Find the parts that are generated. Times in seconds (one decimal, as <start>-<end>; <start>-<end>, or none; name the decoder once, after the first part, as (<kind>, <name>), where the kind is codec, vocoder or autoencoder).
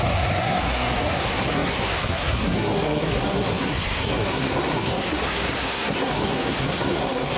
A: 0.0-7.4 (codec, SNAC)